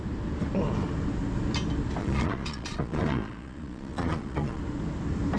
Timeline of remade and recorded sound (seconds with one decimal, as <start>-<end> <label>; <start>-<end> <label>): 0.0-2.0 recorded; 2.0-4.6 remade; 4.6-5.4 recorded